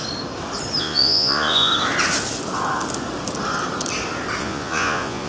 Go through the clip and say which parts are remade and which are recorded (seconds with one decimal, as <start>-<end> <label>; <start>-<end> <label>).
0.0-0.8 recorded; 0.8-1.7 remade; 1.7-4.4 recorded; 4.4-5.3 remade